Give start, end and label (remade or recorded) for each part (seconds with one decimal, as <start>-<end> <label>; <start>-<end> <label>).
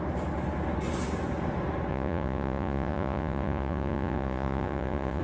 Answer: 0.0-1.9 recorded; 1.9-5.2 remade